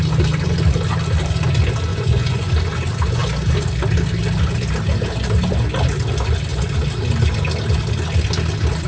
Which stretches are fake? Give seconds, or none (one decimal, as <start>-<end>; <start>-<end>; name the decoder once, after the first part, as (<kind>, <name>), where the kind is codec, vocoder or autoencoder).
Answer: 1.9-2.5 (vocoder, Vocos)